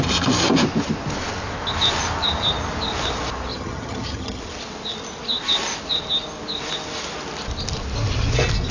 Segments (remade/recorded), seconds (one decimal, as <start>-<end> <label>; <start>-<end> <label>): 0.0-3.5 recorded; 3.5-4.4 remade; 4.4-8.7 recorded